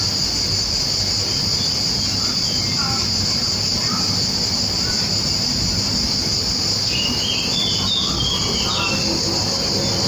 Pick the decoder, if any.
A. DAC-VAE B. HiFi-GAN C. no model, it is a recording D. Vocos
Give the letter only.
C